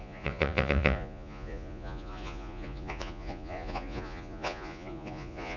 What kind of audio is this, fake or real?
fake